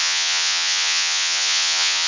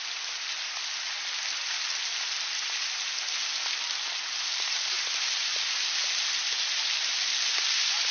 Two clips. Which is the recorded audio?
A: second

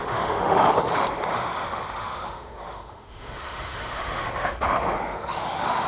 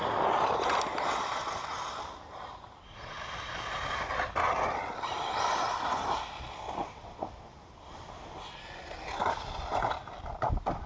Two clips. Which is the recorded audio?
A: second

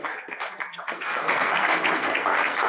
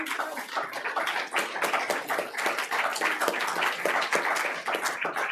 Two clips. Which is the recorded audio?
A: second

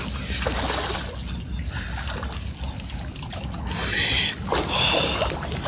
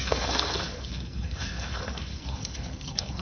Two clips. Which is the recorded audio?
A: first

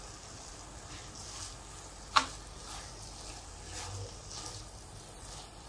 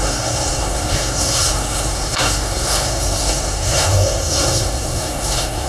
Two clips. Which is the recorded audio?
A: first